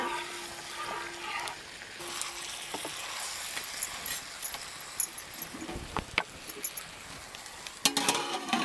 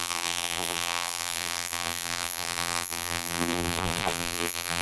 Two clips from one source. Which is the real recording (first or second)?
first